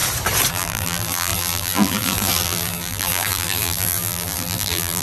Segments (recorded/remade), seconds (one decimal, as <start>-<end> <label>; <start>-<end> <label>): 0.0-0.5 recorded; 0.5-5.0 remade